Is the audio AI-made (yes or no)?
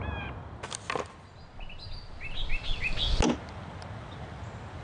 no